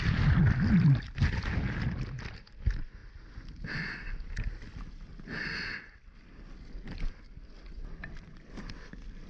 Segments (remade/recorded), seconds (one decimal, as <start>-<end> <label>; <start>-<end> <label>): 0.0-9.3 recorded